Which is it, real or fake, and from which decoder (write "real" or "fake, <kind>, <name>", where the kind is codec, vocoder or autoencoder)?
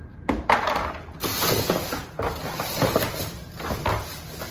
real